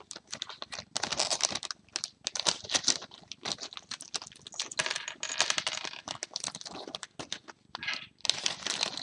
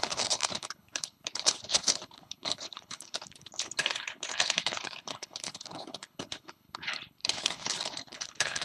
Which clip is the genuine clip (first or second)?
first